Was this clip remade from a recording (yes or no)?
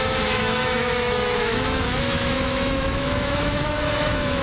yes